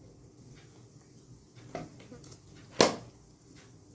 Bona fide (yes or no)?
yes